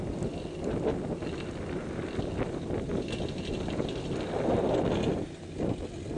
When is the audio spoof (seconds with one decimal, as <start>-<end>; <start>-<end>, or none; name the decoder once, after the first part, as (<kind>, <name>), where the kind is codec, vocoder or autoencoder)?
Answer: none